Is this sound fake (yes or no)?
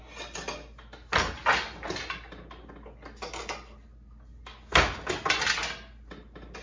no